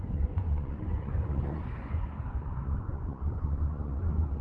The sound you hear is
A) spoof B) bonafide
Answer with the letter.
A